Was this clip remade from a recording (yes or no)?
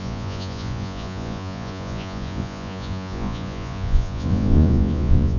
yes